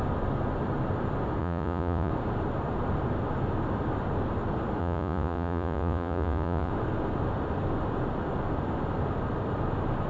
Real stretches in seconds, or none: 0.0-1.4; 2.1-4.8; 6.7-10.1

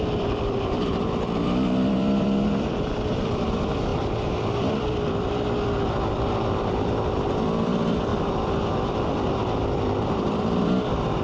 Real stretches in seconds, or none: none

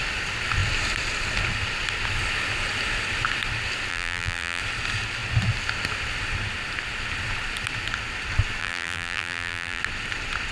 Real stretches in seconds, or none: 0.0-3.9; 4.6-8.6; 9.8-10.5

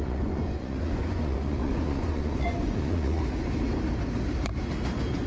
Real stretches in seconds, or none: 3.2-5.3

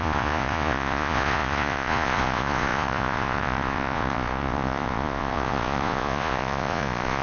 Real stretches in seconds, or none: none

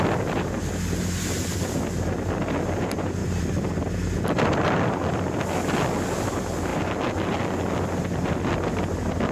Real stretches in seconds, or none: 0.0-3.2; 3.7-6.7; 8.0-9.3